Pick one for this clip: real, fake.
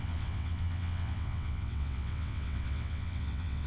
fake